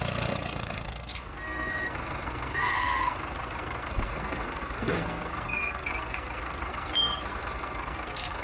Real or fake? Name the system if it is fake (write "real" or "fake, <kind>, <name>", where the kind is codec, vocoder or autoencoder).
fake, codec, SNAC